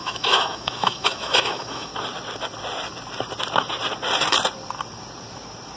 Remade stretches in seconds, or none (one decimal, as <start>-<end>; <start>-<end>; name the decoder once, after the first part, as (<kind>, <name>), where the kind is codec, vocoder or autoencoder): 0.0-1.9 (autoencoder, DAC-VAE)